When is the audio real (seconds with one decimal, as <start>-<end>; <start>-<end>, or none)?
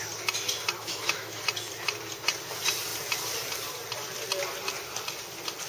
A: 0.0-0.8; 1.4-5.7